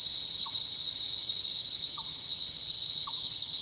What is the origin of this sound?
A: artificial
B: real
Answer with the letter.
A